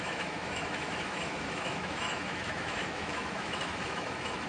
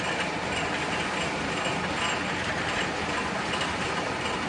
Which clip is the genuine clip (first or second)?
second